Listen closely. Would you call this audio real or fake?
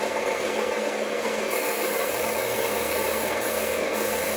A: fake